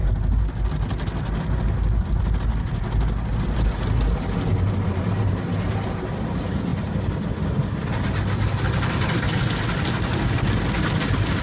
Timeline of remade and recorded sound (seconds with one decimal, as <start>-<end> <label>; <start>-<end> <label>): 0.0-11.4 recorded